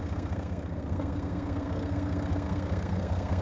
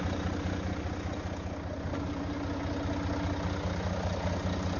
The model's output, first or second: first